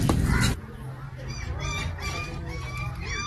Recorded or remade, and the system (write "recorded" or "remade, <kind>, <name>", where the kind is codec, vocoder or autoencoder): recorded